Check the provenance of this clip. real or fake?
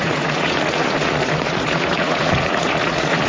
fake